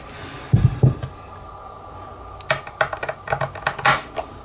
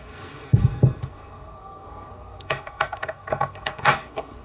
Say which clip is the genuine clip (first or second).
first